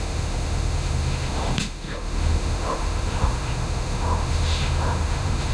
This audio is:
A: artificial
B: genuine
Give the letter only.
A